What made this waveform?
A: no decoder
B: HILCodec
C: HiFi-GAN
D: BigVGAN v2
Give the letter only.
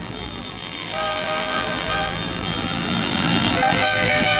D